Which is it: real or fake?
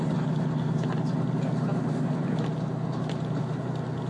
real